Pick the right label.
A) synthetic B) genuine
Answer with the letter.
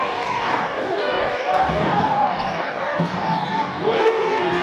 A